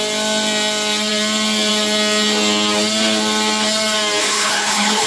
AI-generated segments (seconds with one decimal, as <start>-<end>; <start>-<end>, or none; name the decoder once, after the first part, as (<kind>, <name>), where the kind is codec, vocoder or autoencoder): 4.2-5.1 (codec, HILCodec)